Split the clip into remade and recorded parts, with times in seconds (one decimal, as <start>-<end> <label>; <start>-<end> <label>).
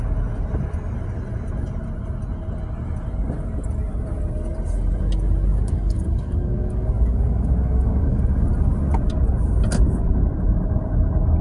0.0-5.5 recorded; 5.5-8.2 remade; 8.2-11.4 recorded